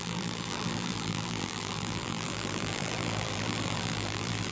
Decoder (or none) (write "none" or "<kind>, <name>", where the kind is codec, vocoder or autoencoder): vocoder, BigVGAN v2